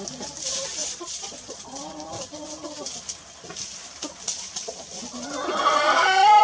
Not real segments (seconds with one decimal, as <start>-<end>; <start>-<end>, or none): 0.8-1.6